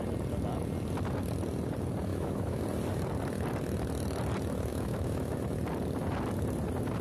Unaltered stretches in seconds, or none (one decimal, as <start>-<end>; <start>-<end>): 0.0-2.1; 2.6-4.7; 5.3-7.0